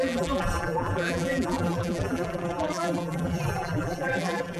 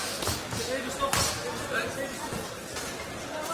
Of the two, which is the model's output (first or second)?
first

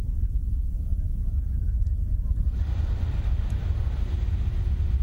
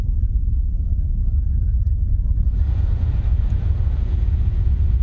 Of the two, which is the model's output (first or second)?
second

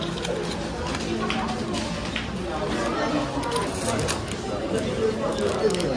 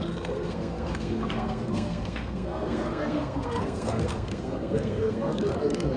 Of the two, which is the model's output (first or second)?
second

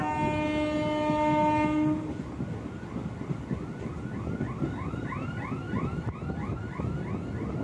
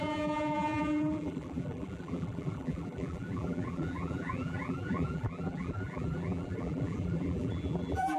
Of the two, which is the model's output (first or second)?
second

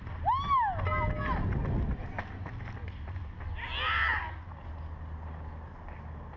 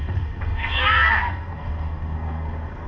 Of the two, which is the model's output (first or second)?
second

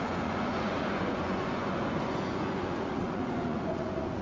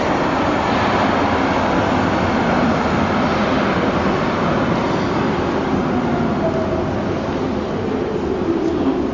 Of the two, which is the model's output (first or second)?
first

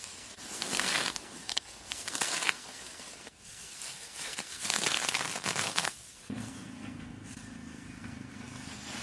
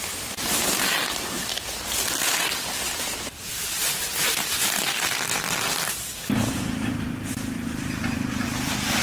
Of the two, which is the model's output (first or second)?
first